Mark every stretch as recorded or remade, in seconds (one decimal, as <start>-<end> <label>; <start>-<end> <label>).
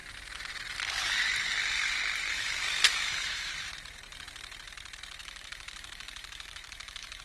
0.0-2.3 recorded; 2.3-3.5 remade; 3.5-5.2 recorded; 5.2-7.2 remade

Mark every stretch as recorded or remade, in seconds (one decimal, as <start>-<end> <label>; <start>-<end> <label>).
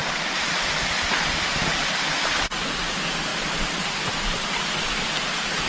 0.0-3.3 recorded; 3.3-4.6 remade; 4.6-5.7 recorded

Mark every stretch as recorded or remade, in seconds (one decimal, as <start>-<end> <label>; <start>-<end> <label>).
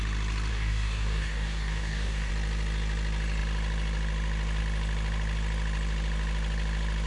0.0-0.5 recorded; 0.5-2.3 remade; 2.3-7.1 recorded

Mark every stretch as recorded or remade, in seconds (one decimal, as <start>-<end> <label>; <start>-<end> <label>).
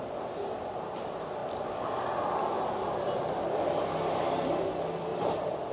0.0-5.1 recorded; 5.1-5.7 remade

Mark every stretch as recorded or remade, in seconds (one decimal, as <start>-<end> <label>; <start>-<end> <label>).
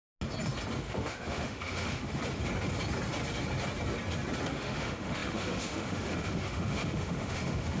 0.0-0.8 recorded; 0.8-2.2 remade; 2.2-4.5 recorded; 4.5-7.8 remade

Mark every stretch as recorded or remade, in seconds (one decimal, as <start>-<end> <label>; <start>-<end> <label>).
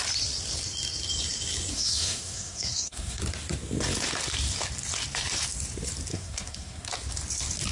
0.0-1.7 recorded; 1.7-3.2 remade; 3.2-6.1 recorded; 6.1-6.9 remade; 6.9-7.7 recorded